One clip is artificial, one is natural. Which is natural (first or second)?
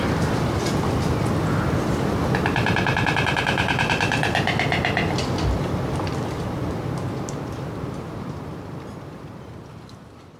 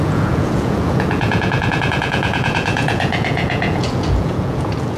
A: first